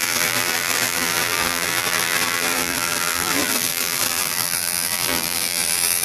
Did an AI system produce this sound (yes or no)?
yes